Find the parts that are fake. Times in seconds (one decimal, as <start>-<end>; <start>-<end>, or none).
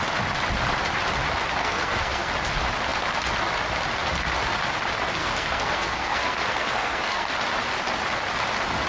1.6-2.3; 5.2-7.3